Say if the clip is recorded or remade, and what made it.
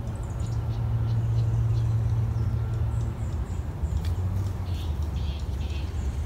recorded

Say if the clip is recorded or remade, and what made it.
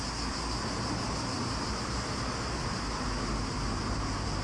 recorded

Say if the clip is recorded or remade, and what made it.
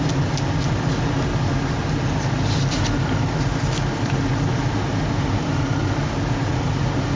recorded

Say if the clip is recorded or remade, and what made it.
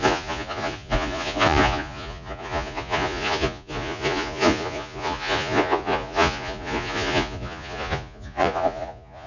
remade, vocoder, Vocos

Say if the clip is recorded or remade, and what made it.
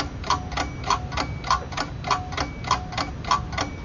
recorded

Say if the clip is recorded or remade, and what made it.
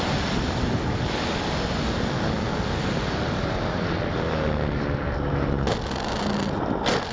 recorded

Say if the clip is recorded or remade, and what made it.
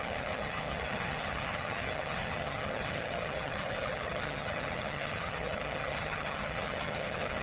remade, vocoder, HiFi-GAN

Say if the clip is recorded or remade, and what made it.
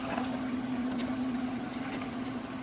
remade, vocoder, HiFi-GAN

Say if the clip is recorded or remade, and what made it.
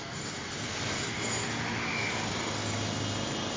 recorded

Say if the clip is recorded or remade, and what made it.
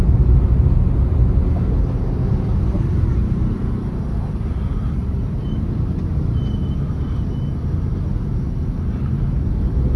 recorded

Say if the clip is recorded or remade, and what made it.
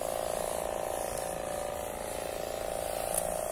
recorded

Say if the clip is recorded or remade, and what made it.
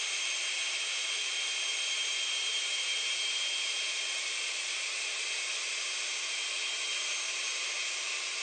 remade, vocoder, BigVGAN v2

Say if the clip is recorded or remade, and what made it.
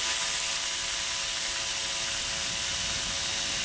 recorded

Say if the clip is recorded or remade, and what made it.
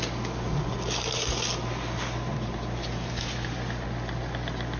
recorded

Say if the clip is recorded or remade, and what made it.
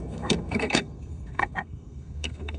remade, codec, SNAC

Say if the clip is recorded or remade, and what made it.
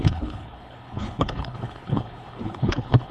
remade, codec, HILCodec